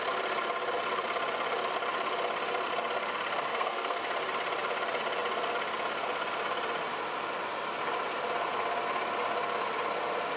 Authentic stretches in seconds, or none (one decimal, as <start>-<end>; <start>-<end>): 0.0-3.5; 4.0-10.4

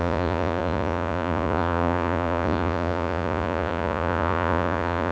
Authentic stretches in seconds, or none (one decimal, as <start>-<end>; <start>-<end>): none

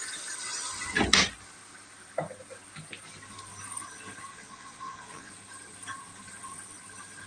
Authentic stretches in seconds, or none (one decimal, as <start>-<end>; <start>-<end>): 0.0-4.3; 5.3-7.3

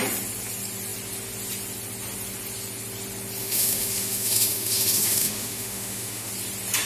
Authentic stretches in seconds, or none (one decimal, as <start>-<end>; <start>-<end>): 0.0-3.4; 6.3-6.9

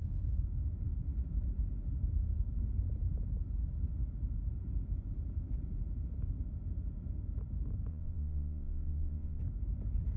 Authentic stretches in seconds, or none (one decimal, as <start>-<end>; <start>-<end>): 0.0-7.9; 9.4-10.2

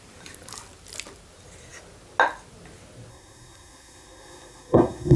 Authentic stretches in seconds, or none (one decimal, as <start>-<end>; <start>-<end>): 0.0-3.1

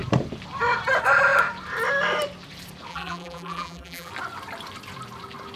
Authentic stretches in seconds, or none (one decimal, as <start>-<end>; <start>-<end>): 0.0-2.9; 4.1-5.6

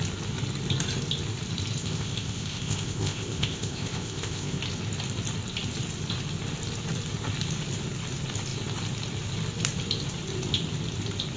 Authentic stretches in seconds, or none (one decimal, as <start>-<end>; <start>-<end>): 0.0-1.8; 4.6-11.4